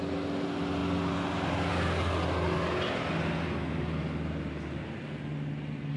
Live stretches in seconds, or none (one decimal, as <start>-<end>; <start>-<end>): 0.0-6.0